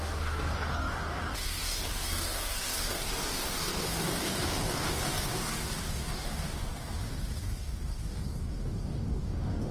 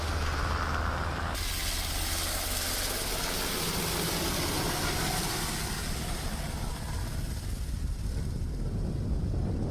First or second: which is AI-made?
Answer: first